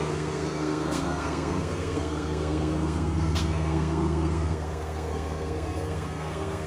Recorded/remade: remade